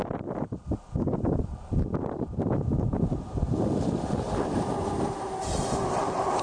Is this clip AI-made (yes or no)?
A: no